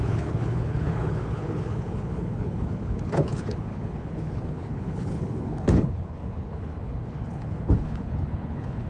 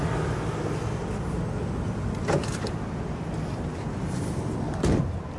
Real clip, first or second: second